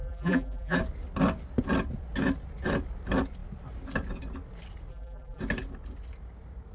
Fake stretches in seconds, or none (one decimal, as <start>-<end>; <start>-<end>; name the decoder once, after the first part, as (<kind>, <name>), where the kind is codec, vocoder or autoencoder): 0.0-0.8 (vocoder, BigVGAN v2); 4.9-5.4